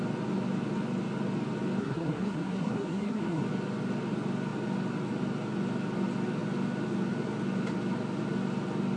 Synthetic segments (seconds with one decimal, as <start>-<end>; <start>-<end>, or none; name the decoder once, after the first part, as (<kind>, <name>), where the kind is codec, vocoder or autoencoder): 1.8-3.4 (codec, SNAC)

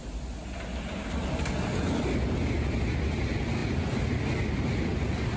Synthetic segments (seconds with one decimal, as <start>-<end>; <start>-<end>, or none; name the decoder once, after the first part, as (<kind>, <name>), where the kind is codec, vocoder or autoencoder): none

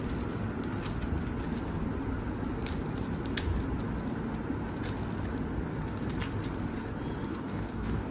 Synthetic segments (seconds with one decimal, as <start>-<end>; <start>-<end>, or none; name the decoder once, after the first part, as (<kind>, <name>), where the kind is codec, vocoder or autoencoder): 7.3-8.1 (codec, DAC)

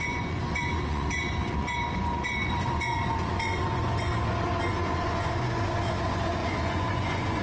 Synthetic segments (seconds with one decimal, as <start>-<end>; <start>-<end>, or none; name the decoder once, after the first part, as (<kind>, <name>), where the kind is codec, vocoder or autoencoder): 0.0-4.1 (vocoder, Vocos); 4.7-7.4

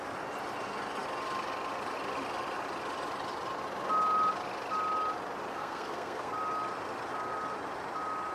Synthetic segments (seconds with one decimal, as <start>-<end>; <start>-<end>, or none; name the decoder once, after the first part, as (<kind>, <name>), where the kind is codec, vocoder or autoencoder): 5.5-6.3 (codec, SNAC)

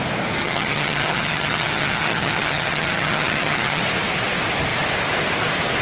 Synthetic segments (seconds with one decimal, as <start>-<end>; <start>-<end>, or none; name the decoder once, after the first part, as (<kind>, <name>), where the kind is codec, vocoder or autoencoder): 0.4-3.8 (vocoder, HiFi-GAN)

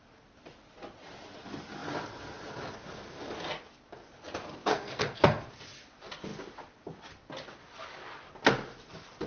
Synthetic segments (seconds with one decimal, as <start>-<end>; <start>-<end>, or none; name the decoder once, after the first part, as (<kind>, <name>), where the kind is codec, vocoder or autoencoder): 4.7-5.5 (codec, SNAC)

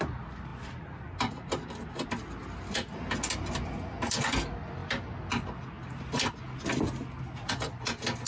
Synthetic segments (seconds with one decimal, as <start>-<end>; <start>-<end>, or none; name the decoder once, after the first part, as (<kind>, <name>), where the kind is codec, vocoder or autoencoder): none